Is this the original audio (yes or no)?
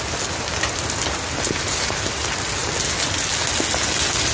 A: yes